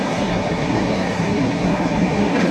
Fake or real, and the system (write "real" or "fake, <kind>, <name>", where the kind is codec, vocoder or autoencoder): fake, codec, SNAC